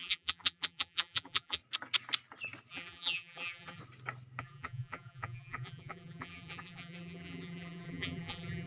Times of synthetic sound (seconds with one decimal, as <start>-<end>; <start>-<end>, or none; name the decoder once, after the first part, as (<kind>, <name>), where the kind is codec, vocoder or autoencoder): 0.0-1.6 (vocoder, BigVGAN v2); 2.7-3.8; 4.4-8.7